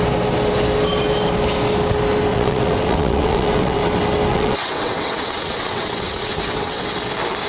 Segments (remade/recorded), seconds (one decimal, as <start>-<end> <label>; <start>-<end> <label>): 0.0-2.3 recorded; 2.3-3.8 remade; 3.8-4.3 recorded; 4.3-6.8 remade; 6.8-7.5 recorded